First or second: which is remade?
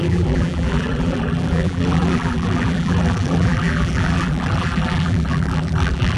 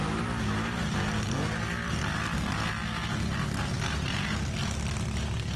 first